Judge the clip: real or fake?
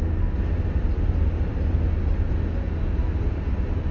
real